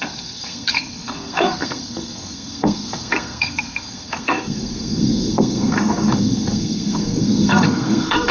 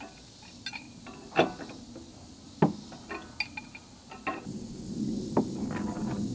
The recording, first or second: second